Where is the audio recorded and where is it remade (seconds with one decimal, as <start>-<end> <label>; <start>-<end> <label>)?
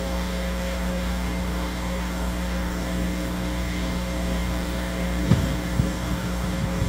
0.0-6.9 remade